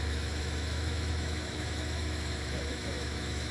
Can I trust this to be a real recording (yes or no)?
no